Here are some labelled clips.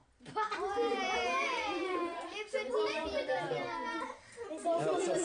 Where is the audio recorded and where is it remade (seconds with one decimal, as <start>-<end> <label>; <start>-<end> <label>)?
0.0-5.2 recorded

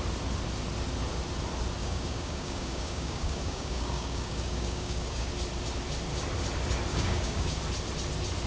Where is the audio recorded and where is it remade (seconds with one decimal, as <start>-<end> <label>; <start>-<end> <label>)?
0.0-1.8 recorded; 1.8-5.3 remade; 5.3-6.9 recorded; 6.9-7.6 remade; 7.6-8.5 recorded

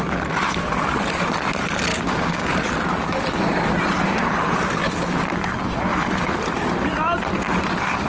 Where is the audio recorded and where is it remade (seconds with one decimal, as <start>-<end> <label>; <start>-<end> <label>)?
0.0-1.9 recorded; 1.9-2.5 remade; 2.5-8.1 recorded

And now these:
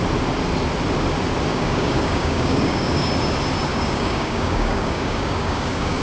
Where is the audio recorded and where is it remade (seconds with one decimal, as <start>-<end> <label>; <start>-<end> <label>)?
0.0-1.5 recorded; 1.5-3.1 remade; 3.1-3.7 recorded; 3.7-6.0 remade

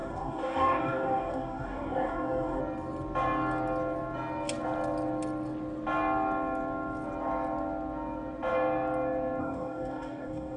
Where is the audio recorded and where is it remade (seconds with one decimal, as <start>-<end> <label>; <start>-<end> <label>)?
0.0-2.6 remade; 2.6-9.4 recorded; 9.4-10.6 remade